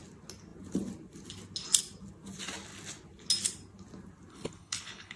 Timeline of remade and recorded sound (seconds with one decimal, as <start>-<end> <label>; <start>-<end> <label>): 0.0-4.3 recorded; 4.3-5.2 remade